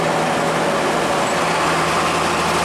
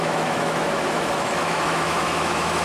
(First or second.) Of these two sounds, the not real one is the second